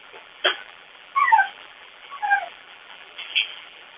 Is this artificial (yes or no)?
yes